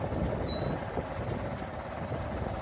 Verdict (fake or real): real